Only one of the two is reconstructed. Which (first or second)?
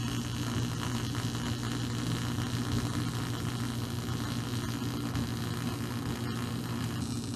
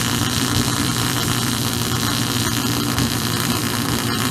second